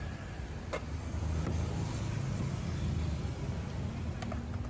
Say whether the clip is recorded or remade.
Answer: recorded